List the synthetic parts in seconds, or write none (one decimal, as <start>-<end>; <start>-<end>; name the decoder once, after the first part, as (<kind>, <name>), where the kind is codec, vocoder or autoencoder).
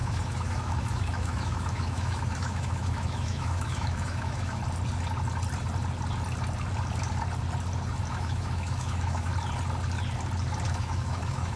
0.0-4.6 (autoencoder, DAC-VAE); 8.1-9.3; 10.7-11.6